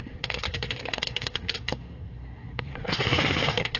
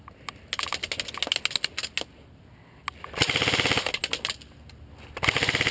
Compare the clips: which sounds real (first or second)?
second